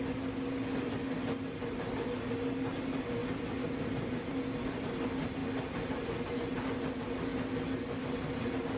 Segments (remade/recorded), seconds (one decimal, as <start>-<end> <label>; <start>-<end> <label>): 0.0-8.8 recorded